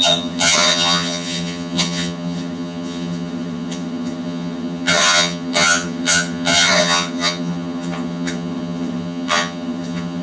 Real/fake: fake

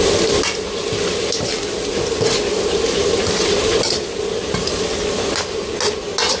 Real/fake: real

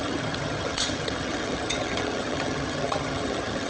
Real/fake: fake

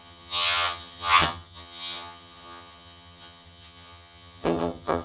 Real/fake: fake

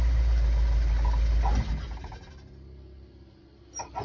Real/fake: real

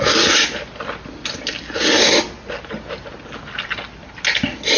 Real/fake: real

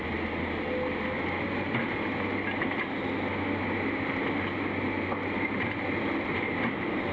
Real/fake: real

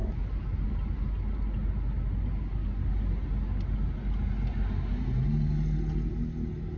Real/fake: real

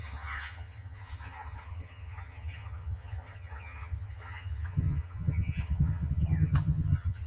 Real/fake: fake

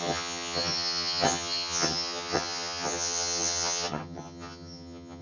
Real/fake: fake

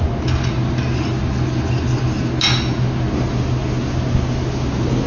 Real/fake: real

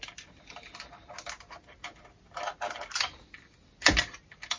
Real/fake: real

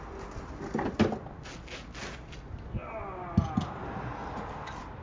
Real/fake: real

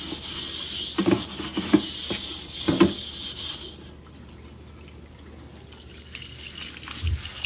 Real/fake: real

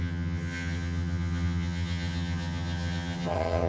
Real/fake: fake